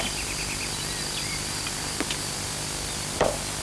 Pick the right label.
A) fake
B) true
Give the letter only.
B